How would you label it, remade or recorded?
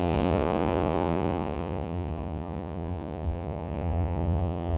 remade